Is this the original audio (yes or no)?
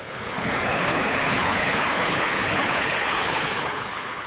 no